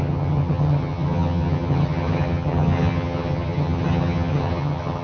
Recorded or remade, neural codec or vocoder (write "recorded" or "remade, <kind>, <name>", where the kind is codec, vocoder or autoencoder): remade, vocoder, HiFi-GAN